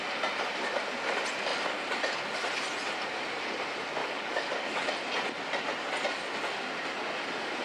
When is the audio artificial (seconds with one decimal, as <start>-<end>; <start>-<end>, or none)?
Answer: 4.0-4.9